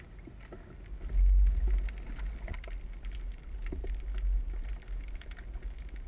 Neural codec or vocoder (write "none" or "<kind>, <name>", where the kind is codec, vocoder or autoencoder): none